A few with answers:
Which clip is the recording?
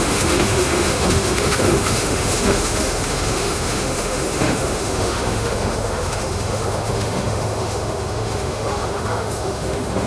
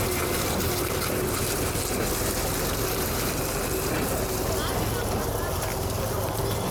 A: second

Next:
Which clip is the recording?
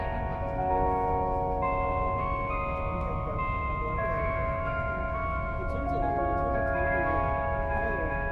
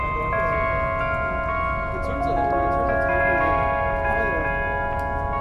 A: second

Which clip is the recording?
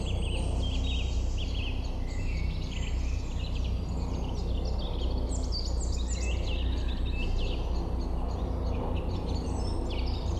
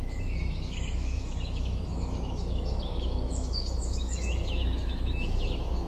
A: first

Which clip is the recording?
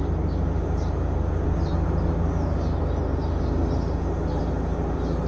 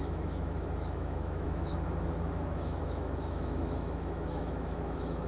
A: first